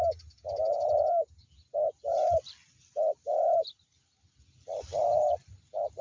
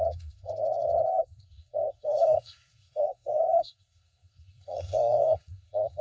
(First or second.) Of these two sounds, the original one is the first